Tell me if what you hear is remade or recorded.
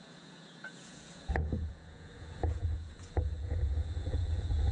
remade